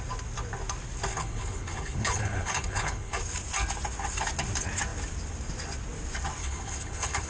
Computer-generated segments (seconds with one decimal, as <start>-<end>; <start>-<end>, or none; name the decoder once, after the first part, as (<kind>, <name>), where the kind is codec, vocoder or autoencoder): 1.1-3.2 (codec, HILCodec); 6.4-7.3